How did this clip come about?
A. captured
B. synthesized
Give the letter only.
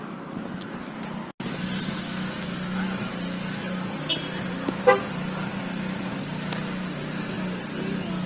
A